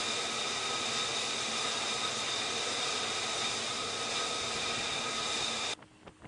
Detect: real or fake real